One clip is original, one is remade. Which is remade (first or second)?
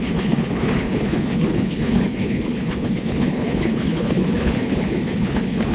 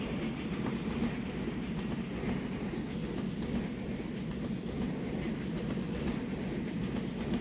first